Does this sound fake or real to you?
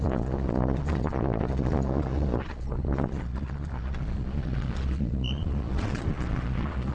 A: fake